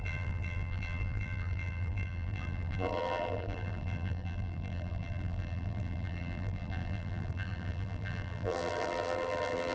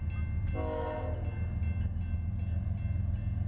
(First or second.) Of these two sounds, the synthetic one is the first